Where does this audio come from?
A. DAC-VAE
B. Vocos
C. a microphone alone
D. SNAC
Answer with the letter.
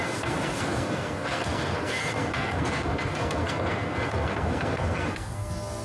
D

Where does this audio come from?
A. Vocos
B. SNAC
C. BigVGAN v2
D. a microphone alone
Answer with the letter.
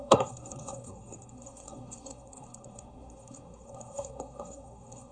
B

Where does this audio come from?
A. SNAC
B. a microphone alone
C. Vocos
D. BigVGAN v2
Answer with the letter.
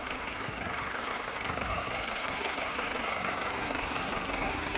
A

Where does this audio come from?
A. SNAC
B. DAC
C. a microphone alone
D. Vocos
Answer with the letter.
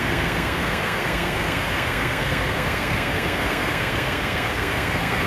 A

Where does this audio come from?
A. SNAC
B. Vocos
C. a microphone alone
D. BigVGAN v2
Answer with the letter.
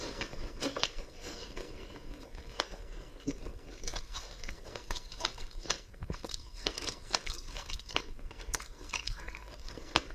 A